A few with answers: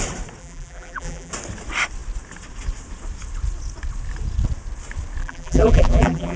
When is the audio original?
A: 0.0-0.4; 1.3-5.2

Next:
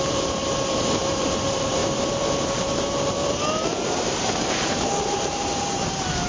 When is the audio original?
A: none

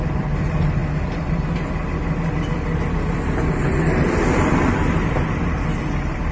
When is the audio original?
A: 0.8-2.5

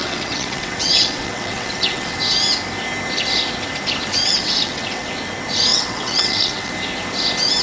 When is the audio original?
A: 2.2-4.1; 5.1-5.7; 6.7-7.6

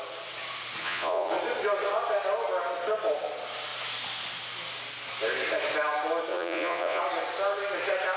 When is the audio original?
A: 0.0-0.8; 1.3-6.3; 7.0-8.2

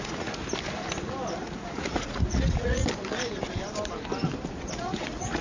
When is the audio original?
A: 0.4-1.4; 2.8-4.5

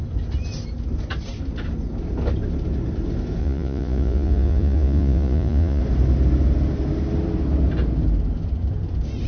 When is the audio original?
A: 0.0-3.4; 5.8-9.3

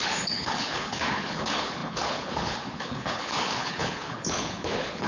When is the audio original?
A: none